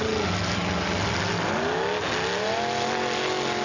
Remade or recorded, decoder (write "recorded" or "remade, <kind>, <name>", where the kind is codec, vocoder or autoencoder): recorded